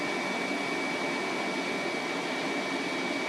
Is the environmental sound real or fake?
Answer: real